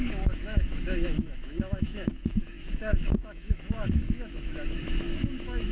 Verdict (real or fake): fake